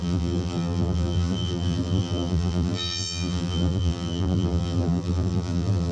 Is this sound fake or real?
fake